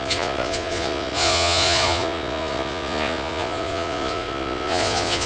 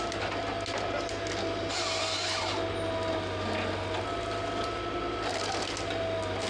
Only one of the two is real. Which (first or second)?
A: second